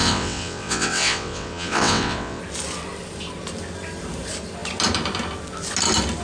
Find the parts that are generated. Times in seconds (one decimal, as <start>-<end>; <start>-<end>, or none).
0.0-2.4

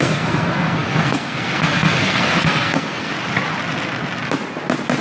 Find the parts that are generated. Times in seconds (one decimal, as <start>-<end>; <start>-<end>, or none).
0.0-3.1

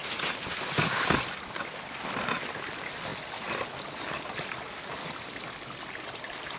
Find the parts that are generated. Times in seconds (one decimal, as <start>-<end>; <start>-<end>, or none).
none

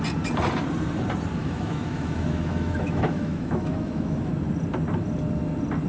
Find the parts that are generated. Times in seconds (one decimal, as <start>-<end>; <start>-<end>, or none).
1.4-4.3

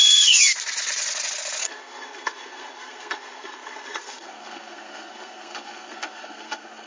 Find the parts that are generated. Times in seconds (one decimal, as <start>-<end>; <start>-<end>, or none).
0.0-0.5; 1.6-6.9

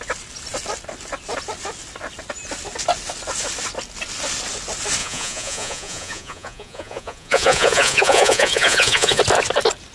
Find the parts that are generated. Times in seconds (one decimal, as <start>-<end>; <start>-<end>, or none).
5.0-9.2

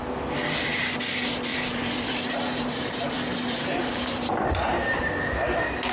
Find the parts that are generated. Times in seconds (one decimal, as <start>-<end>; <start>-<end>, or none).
1.5-5.0